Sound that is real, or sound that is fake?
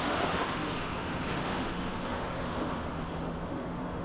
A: fake